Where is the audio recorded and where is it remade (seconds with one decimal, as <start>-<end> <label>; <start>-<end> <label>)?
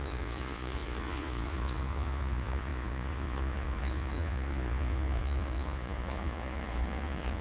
0.0-7.4 remade